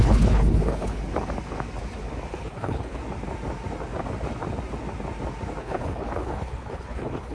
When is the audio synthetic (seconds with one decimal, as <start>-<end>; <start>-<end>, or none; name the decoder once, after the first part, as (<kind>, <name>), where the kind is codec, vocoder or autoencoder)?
0.0-1.0 (codec, HILCodec); 2.3-3.0; 5.6-7.3